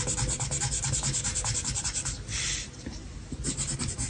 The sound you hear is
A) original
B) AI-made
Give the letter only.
A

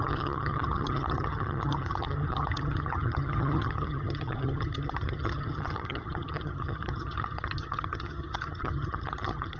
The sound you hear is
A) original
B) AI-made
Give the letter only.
B